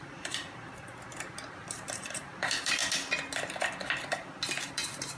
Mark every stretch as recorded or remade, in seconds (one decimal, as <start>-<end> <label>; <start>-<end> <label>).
0.0-2.8 remade; 2.8-4.7 recorded; 4.7-5.2 remade